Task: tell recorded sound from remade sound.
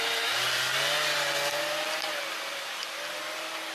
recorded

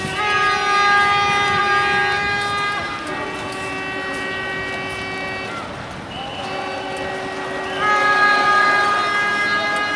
recorded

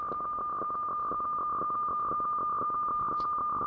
recorded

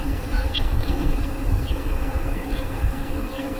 remade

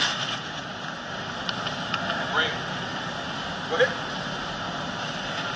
recorded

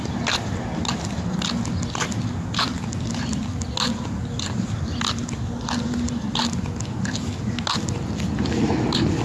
recorded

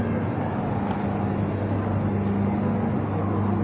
recorded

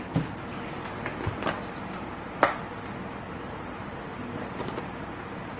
remade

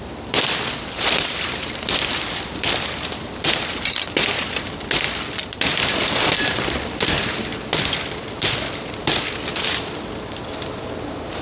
remade